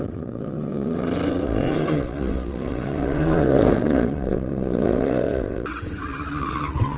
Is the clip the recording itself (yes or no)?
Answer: no